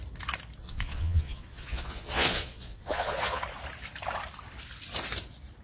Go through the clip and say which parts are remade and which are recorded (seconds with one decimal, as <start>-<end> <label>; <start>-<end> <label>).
0.0-0.6 recorded; 0.6-3.4 remade; 3.4-5.6 recorded